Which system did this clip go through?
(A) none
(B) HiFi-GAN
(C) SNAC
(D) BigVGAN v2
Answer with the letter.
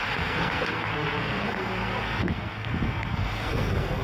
C